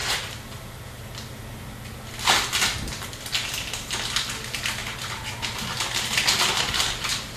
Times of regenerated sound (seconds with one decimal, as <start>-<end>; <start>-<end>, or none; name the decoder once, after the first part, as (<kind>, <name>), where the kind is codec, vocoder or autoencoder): 0.0-1.1 (vocoder, BigVGAN v2); 4.8-5.3